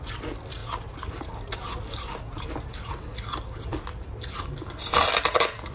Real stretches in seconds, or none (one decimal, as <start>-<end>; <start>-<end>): 0.0-0.6; 1.3-5.7